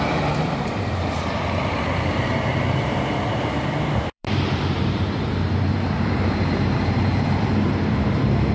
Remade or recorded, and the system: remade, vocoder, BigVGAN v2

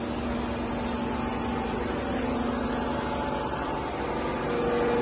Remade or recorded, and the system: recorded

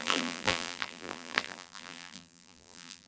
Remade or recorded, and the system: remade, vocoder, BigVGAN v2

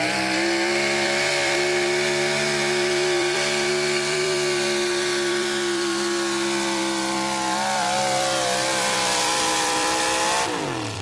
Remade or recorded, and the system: remade, vocoder, BigVGAN v2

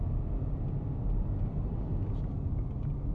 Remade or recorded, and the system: recorded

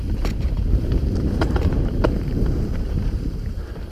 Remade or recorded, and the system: remade, vocoder, BigVGAN v2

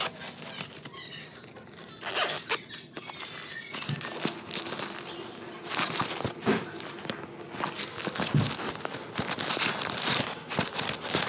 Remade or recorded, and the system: recorded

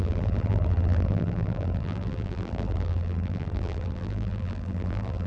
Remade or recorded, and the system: remade, vocoder, BigVGAN v2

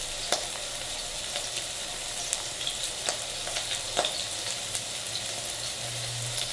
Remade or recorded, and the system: remade, vocoder, BigVGAN v2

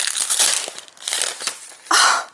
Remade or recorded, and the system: recorded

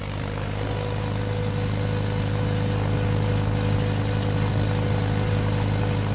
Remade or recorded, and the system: recorded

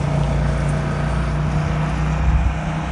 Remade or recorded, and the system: recorded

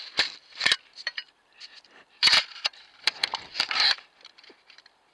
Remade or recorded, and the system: remade, vocoder, BigVGAN v2